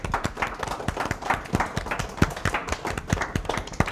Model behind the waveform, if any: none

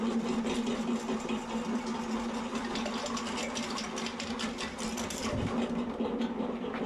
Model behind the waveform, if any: none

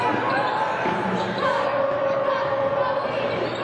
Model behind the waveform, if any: none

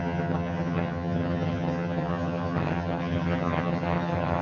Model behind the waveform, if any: vocoder, HiFi-GAN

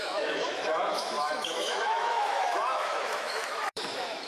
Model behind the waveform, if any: autoencoder, DAC-VAE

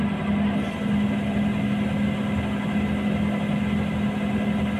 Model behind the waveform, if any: none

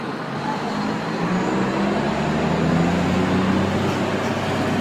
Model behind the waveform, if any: none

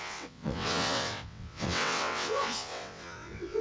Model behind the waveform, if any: vocoder, WaveNeXt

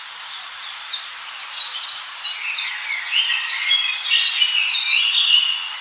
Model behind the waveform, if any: none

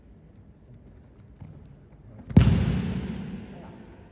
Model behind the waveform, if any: none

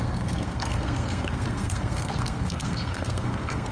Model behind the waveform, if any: codec, SNAC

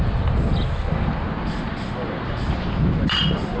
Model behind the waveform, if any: none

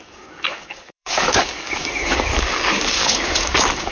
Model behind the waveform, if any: codec, DAC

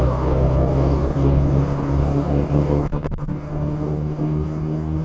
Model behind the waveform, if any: codec, DAC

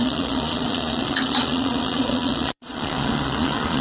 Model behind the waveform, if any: vocoder, Vocos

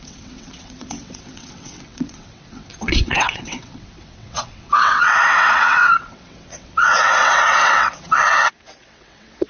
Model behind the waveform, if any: vocoder, WaveNeXt